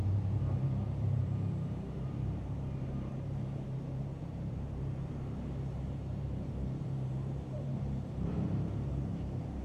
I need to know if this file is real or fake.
fake